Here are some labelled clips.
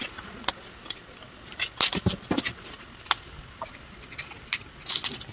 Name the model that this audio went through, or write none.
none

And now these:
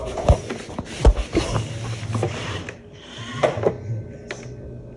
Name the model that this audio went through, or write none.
none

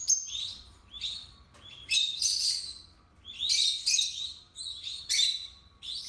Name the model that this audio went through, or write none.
none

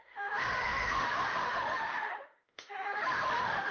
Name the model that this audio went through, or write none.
autoencoder, DAC-VAE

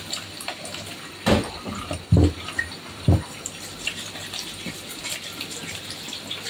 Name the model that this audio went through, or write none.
none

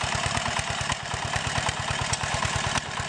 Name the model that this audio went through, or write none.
vocoder, BigVGAN v2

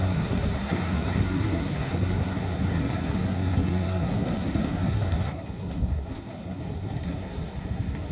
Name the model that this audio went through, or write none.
codec, SNAC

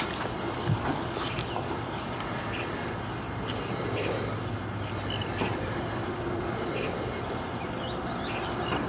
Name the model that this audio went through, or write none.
none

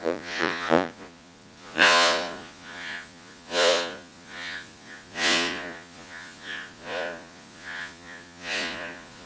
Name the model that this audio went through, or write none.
vocoder, Vocos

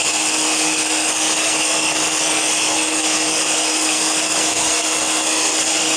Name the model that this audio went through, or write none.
codec, SNAC